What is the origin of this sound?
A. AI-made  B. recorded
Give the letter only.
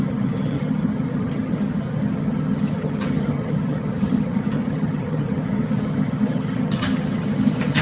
A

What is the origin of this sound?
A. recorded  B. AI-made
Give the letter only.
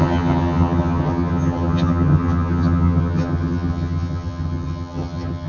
B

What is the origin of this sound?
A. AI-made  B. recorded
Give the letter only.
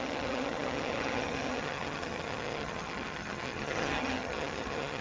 A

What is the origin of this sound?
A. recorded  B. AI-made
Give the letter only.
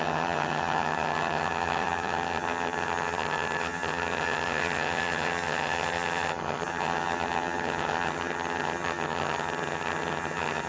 B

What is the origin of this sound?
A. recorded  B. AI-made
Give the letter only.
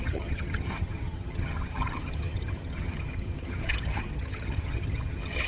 B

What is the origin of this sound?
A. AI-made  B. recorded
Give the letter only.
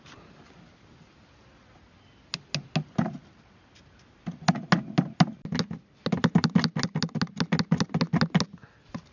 B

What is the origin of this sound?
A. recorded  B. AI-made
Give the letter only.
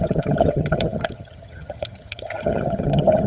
B